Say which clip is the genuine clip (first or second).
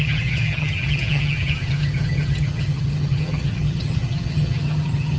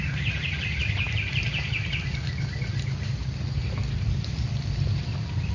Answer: second